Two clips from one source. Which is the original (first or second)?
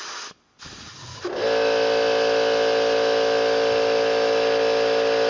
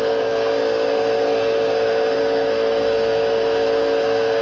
first